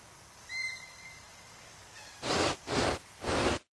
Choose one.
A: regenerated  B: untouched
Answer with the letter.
A